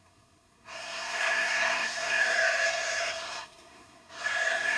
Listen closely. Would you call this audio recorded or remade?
remade